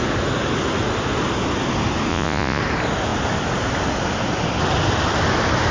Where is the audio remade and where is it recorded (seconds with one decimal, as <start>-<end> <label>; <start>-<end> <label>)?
0.0-2.1 recorded; 2.1-2.6 remade; 2.6-5.7 recorded